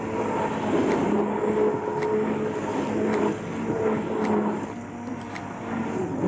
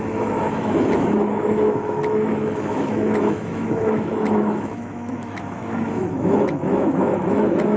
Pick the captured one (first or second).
first